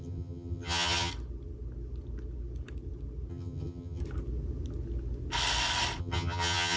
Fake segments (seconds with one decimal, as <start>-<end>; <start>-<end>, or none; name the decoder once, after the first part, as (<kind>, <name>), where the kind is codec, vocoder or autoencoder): 0.0-1.1 (vocoder, HiFi-GAN); 3.3-4.0; 6.0-6.8